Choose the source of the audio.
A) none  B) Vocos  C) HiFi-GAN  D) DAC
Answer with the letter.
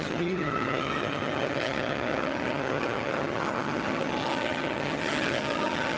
C